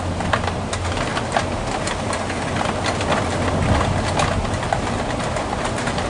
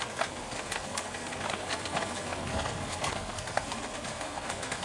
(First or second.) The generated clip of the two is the second